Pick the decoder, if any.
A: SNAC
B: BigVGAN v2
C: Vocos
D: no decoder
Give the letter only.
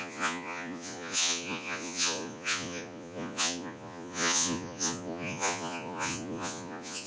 C